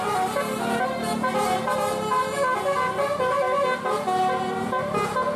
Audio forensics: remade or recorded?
recorded